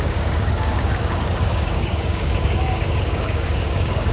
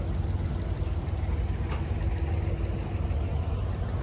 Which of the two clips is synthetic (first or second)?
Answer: first